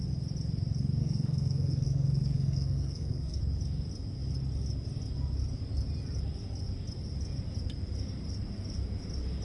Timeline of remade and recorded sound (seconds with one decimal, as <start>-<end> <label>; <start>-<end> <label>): 0.0-1.0 recorded; 1.0-3.4 remade; 3.4-9.4 recorded